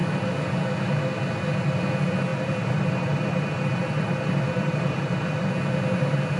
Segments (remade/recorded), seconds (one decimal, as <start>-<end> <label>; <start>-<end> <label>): 0.0-2.3 recorded; 2.3-5.5 remade; 5.5-6.4 recorded